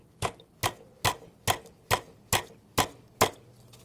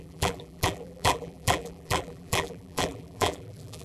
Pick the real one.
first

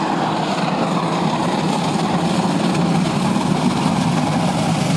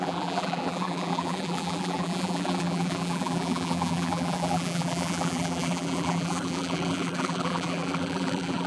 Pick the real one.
first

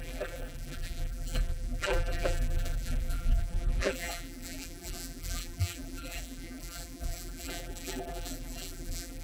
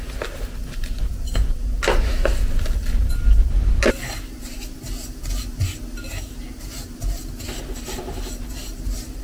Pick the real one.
second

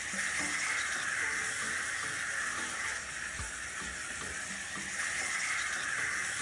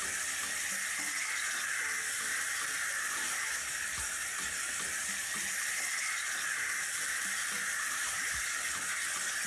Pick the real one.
first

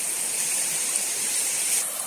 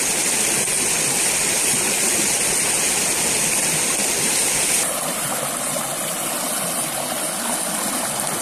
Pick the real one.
second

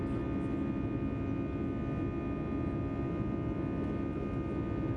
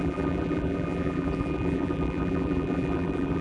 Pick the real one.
first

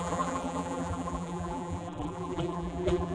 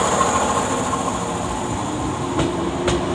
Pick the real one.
second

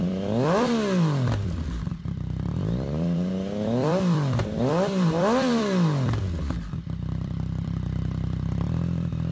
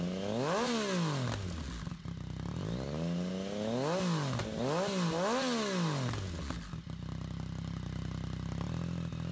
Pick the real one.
second